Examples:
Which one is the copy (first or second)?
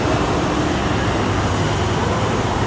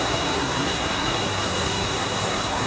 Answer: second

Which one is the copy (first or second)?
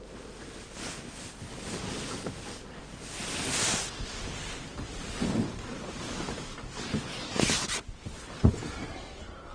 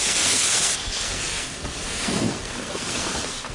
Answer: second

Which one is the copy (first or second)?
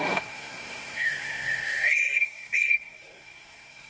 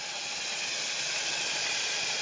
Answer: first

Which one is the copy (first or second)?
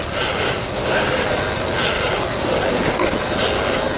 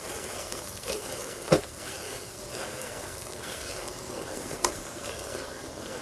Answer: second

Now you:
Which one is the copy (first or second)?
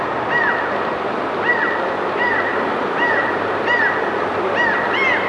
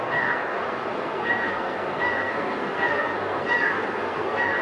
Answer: second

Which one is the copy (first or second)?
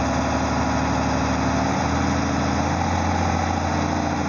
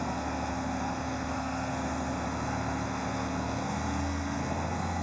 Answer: second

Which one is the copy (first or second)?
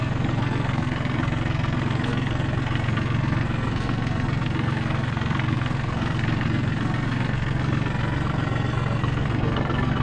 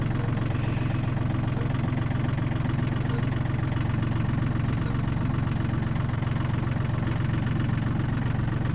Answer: first